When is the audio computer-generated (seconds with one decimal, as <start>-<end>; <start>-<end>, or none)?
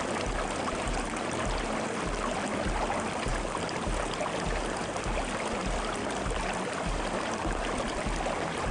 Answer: none